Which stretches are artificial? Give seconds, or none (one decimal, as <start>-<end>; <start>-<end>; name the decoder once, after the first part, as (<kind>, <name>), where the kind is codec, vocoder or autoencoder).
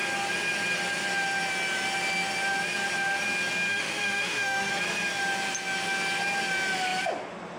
3.7-4.7 (autoencoder, DAC-VAE)